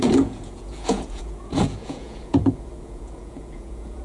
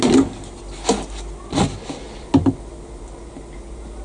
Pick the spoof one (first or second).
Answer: first